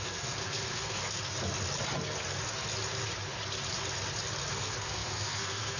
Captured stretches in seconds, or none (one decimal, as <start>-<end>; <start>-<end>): 1.0-4.5